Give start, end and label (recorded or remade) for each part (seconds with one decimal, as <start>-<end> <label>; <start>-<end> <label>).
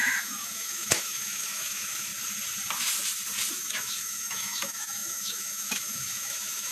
0.0-2.1 remade; 2.1-3.5 recorded; 3.5-6.7 remade